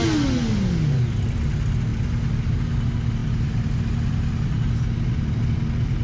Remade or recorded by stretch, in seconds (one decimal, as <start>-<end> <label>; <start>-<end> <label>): 0.0-6.0 recorded